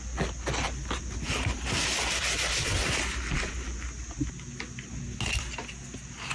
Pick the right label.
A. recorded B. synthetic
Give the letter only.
A